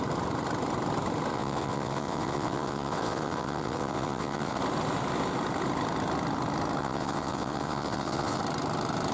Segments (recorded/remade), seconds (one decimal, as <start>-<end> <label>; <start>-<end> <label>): 0.0-1.3 recorded; 1.3-4.6 remade; 4.6-6.8 recorded; 6.8-8.4 remade; 8.4-9.1 recorded